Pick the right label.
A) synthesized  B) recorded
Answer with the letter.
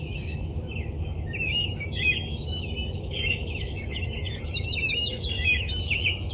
A